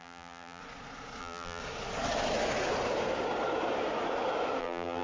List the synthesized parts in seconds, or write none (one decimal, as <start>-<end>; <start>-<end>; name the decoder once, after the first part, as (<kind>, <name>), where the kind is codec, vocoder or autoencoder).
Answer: 0.0-0.6 (vocoder, BigVGAN v2); 1.2-1.6; 4.6-5.0